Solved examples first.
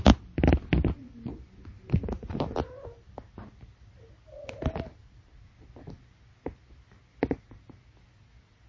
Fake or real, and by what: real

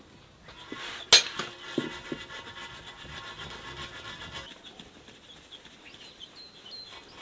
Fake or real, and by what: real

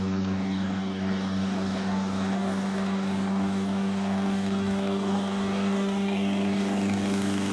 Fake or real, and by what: fake, codec, DAC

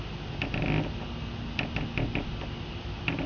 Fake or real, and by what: real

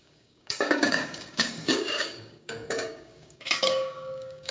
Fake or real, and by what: fake, codec, DAC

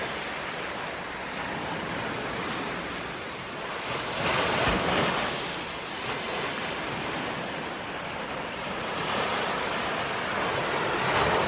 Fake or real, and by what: real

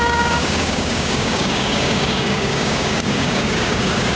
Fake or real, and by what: fake, codec, DAC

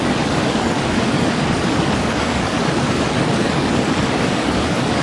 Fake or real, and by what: fake, codec, DAC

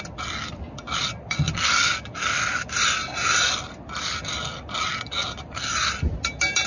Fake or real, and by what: real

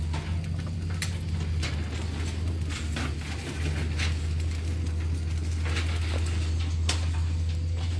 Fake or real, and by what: real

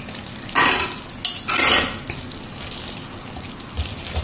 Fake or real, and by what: real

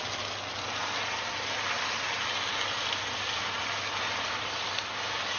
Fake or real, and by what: real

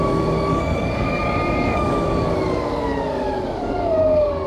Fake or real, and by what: fake, codec, DAC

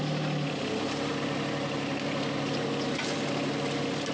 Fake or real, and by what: real